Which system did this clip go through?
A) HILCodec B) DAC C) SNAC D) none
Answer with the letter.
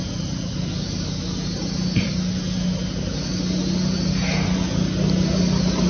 D